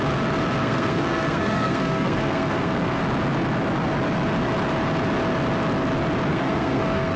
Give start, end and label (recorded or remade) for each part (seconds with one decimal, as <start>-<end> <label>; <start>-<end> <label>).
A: 0.0-0.6 recorded; 0.6-3.0 remade; 3.0-6.3 recorded; 6.3-7.2 remade